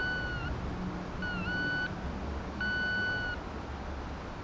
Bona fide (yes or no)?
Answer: yes